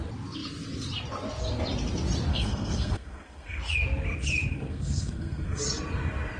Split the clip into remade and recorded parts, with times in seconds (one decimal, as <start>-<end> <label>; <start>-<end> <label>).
0.0-2.3 recorded; 2.3-3.6 remade; 3.6-4.5 recorded; 4.5-5.6 remade; 5.6-6.4 recorded